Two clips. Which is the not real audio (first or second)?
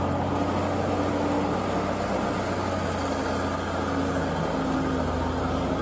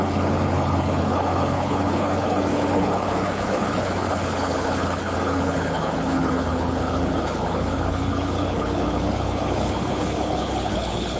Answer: second